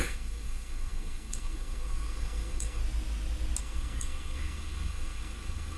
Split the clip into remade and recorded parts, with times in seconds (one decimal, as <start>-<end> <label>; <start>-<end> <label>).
0.0-2.8 remade; 2.8-3.6 recorded; 3.6-5.8 remade